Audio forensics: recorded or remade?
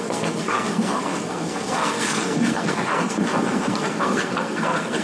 remade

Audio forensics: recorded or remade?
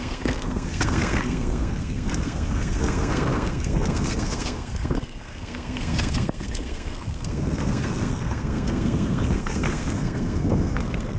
remade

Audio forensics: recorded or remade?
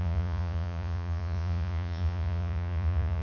remade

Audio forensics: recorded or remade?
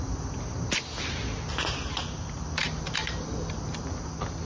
recorded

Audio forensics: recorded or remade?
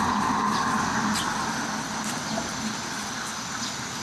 recorded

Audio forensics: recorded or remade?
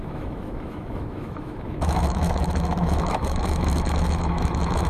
remade